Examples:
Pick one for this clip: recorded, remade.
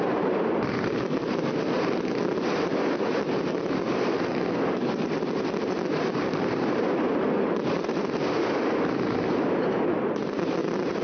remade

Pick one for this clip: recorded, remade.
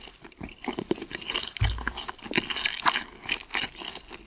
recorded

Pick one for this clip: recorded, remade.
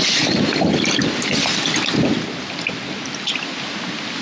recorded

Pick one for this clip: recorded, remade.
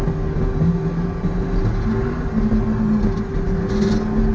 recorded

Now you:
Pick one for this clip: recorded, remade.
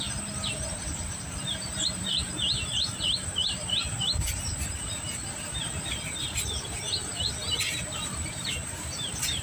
remade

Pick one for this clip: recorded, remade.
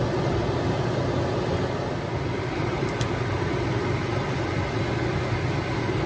remade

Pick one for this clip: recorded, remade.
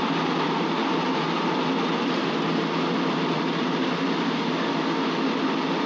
remade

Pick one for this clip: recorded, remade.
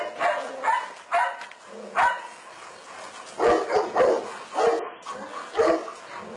recorded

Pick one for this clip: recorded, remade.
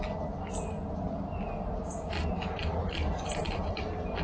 recorded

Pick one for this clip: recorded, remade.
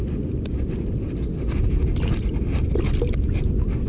recorded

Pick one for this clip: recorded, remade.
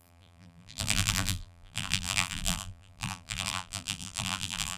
remade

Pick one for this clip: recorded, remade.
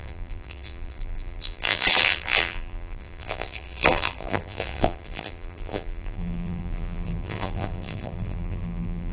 remade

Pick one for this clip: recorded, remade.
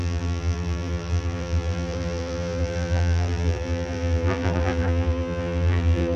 remade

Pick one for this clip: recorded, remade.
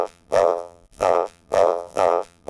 remade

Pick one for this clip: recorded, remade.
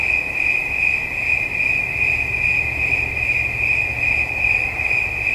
recorded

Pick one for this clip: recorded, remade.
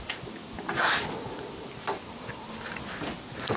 recorded